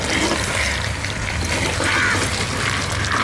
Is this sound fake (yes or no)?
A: no